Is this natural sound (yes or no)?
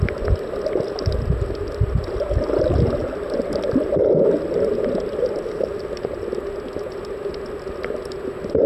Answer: yes